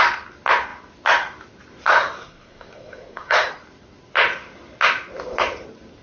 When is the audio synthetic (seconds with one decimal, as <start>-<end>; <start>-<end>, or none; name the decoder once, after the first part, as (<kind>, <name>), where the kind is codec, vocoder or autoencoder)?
1.9-3.5 (codec, SNAC)